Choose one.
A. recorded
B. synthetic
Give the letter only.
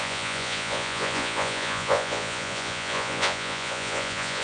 B